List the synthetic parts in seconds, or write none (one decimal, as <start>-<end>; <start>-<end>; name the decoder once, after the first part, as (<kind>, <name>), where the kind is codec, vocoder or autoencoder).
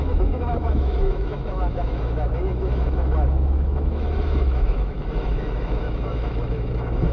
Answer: 0.0-7.1 (autoencoder, DAC-VAE)